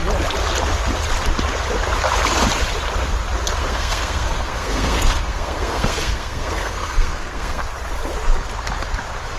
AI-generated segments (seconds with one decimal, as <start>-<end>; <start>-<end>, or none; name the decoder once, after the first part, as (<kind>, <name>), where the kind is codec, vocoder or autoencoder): 3.6-7.6 (codec, SNAC)